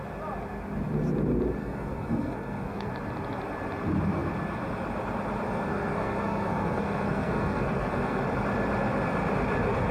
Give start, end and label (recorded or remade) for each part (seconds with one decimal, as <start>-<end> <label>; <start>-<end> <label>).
0.0-1.6 recorded; 1.6-2.9 remade; 2.9-5.7 recorded; 5.7-8.2 remade; 8.2-9.9 recorded